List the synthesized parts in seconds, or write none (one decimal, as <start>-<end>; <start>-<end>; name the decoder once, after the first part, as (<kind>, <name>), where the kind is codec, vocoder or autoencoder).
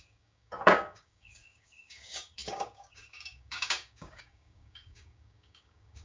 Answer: 0.0-6.0 (codec, DAC)